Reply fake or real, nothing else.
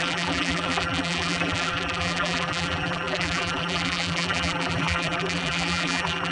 fake